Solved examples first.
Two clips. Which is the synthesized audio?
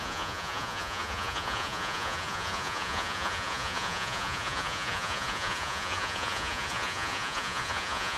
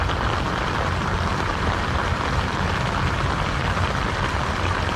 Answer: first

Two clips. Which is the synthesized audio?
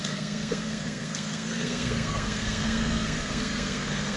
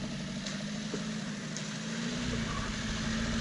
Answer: first